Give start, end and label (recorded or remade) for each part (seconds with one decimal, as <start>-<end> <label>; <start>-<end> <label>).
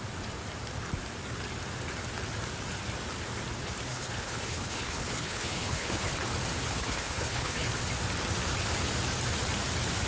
0.0-3.9 recorded; 3.9-6.1 remade; 6.1-6.6 recorded; 6.6-7.7 remade; 7.7-10.1 recorded